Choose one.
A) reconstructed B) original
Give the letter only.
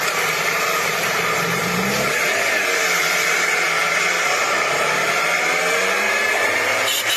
A